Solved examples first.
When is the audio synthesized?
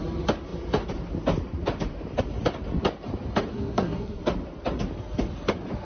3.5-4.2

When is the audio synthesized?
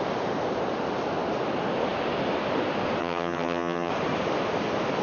3.0-3.9